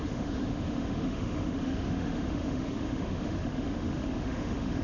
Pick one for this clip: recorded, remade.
remade